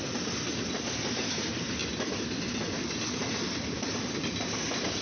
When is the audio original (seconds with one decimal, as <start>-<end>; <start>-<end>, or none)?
0.0-5.0